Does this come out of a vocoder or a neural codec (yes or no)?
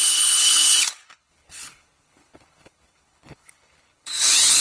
yes